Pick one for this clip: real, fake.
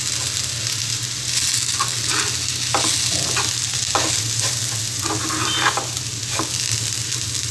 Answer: real